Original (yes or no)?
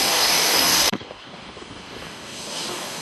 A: no